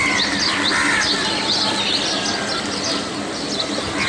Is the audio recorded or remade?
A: recorded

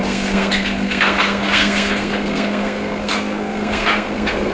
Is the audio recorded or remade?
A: remade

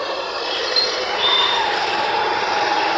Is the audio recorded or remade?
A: remade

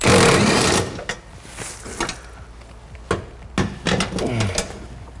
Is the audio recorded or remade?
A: recorded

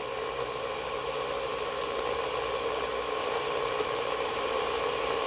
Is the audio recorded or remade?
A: remade